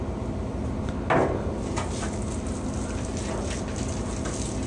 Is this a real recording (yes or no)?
yes